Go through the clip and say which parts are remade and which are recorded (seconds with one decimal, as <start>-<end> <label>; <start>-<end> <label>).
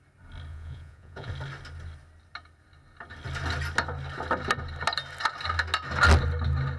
0.0-0.5 recorded; 0.5-1.3 remade; 1.3-6.8 recorded